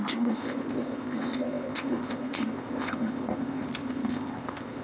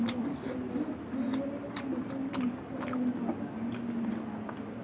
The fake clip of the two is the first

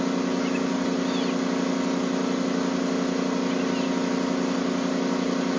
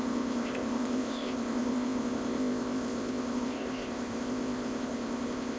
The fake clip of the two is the second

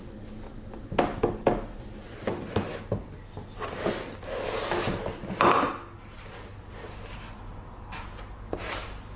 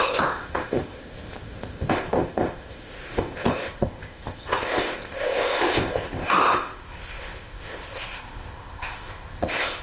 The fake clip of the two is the second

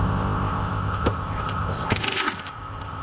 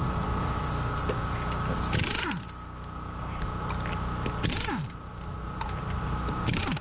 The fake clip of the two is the first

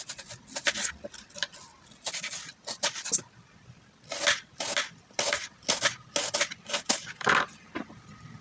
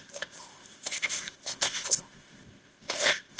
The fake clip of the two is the second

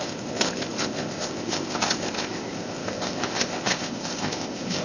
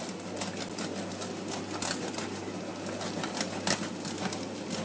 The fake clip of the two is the first